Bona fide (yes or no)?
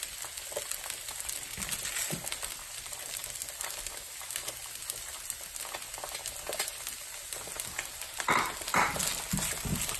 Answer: yes